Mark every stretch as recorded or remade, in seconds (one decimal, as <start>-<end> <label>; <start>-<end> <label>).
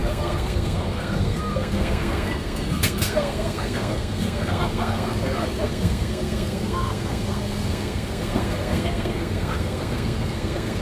0.0-10.8 remade